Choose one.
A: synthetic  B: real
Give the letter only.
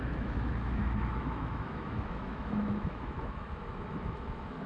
A